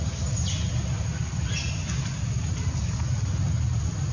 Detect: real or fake real